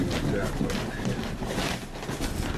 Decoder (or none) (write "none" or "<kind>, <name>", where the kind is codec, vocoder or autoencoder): none